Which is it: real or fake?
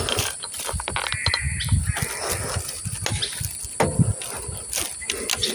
real